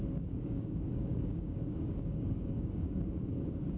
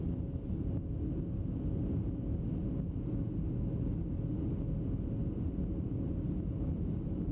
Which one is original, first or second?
second